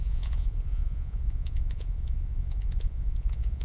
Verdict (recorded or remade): remade